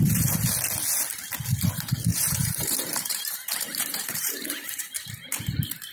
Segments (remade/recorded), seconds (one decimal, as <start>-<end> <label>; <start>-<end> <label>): 0.0-2.1 recorded; 2.1-5.1 remade; 5.1-5.9 recorded